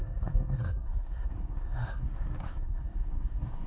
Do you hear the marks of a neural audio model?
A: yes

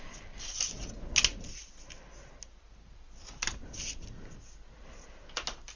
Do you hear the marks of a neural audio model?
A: no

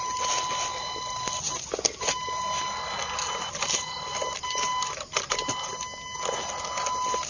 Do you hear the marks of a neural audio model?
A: no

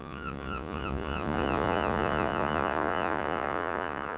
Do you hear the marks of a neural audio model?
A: yes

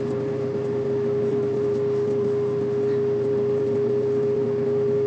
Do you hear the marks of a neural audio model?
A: no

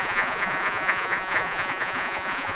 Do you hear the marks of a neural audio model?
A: yes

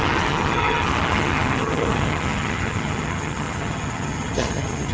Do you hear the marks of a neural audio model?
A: yes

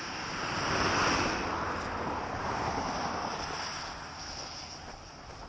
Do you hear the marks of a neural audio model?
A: no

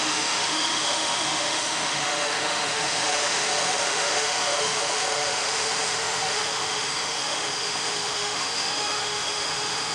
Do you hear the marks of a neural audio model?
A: yes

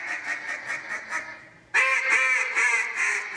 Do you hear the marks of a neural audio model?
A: no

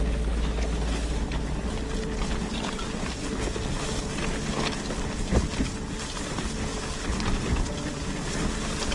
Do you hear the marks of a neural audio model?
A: no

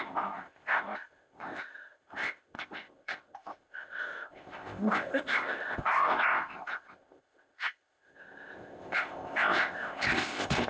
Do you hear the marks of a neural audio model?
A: yes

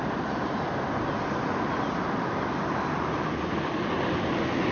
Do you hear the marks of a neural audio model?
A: no